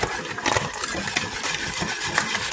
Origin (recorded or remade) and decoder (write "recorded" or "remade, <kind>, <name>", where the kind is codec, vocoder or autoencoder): recorded